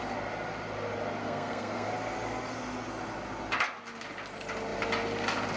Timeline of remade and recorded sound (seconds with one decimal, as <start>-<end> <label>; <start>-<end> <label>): 0.0-1.2 recorded; 1.2-1.9 remade; 1.9-5.6 recorded